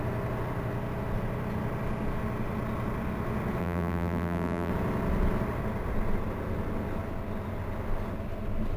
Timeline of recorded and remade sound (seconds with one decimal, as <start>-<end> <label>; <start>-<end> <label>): 0.0-3.6 recorded; 3.6-4.7 remade; 4.7-8.8 recorded